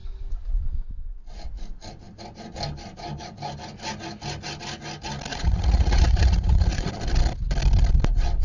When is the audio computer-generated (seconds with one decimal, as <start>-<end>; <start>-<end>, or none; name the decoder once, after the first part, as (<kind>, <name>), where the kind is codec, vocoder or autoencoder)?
5.3-6.9 (vocoder, Vocos)